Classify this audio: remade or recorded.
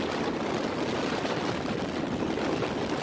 recorded